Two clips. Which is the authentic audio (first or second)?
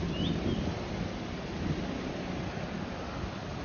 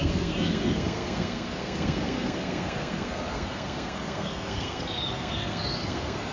first